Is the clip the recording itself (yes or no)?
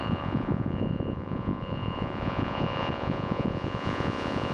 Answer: no